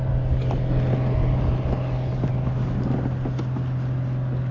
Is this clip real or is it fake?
real